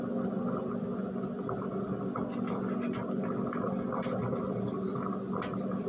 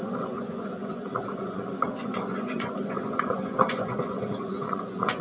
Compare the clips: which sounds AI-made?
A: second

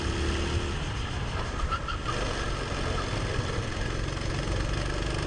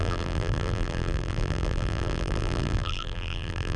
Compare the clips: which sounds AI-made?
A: second